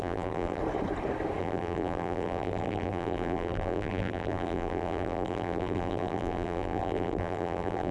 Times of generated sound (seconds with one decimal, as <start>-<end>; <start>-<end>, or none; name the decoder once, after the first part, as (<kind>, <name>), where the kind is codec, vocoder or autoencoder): 0.0-0.6 (vocoder, BigVGAN v2); 1.4-7.9